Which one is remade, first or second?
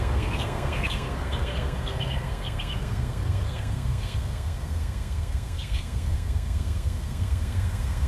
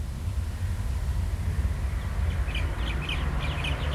first